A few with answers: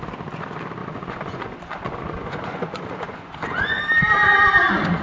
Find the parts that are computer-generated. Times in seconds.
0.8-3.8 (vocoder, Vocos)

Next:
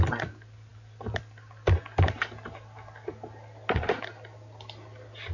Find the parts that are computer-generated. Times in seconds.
none